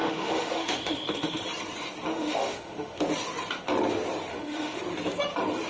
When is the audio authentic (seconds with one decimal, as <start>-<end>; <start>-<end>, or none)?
1.4-2.1; 3.0-4.3; 4.8-5.7